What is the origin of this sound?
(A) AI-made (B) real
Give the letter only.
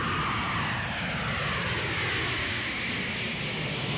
B